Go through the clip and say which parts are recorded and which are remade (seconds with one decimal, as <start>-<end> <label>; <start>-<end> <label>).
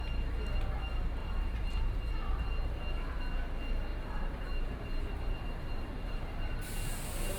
0.0-1.2 recorded; 1.2-2.1 remade; 2.1-3.9 recorded; 3.9-6.7 remade; 6.7-7.4 recorded